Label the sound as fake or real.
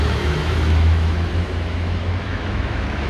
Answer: fake